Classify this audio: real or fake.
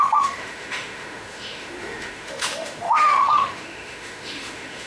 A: fake